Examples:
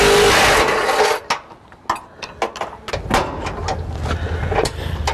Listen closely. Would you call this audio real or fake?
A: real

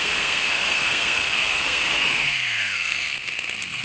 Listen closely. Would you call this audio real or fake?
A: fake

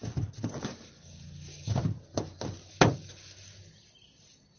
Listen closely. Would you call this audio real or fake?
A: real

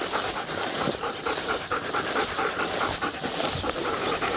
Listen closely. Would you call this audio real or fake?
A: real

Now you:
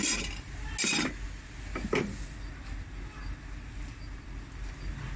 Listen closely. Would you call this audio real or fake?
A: real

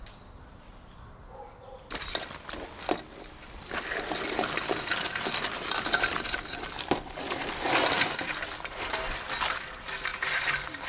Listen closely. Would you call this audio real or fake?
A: real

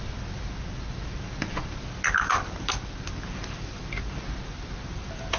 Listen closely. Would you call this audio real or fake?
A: real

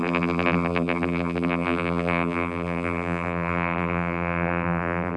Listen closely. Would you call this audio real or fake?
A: fake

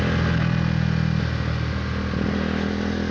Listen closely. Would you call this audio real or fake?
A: real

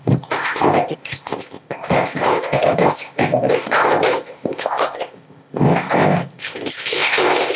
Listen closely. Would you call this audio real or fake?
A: fake